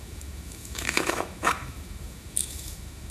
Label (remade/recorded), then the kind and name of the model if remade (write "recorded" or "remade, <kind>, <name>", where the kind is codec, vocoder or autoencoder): remade, autoencoder, DAC-VAE